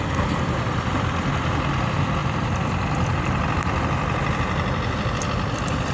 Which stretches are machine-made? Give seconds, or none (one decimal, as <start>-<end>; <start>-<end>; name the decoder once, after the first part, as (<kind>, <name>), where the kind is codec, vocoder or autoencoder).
none